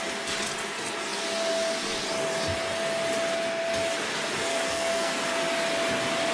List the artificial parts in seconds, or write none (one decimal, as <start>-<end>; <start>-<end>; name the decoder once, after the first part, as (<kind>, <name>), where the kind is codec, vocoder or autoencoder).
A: 4.5-5.1 (codec, SNAC)